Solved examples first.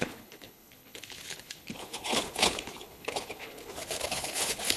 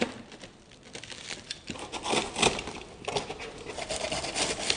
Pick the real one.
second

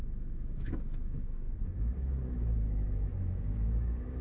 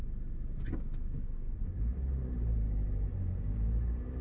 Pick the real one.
second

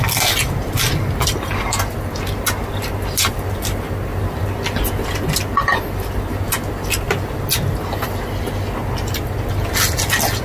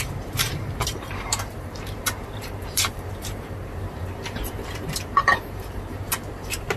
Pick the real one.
first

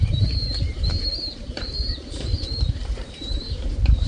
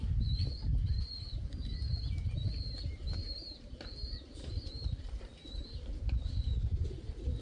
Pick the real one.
second